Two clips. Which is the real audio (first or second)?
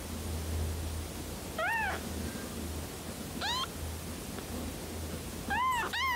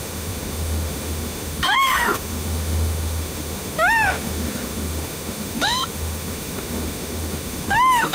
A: first